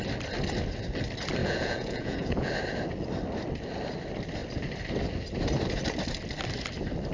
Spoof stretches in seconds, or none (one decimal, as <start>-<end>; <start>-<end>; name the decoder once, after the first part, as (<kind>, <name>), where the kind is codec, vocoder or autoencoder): 1.4-2.5 (vocoder, Vocos)